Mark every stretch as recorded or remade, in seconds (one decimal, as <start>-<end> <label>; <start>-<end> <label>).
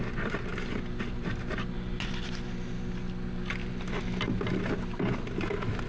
0.0-5.9 recorded